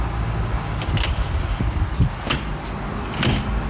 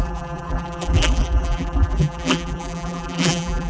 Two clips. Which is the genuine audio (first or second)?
first